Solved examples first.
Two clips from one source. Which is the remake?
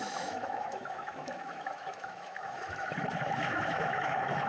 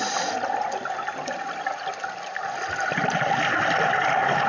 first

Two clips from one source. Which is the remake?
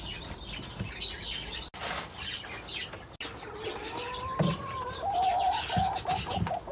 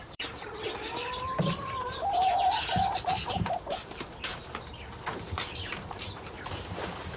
second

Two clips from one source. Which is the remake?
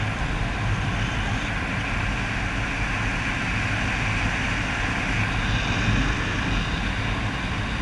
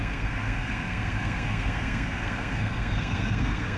second